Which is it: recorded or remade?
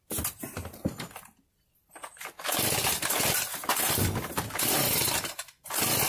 recorded